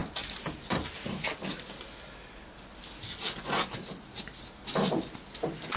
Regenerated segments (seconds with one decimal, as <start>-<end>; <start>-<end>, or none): 0.0-0.7